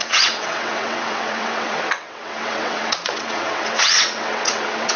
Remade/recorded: remade